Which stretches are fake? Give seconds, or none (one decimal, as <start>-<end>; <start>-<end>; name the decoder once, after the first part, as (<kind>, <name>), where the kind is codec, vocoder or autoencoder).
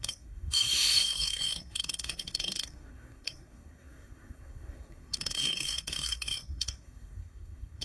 0.0-7.8 (codec, SNAC)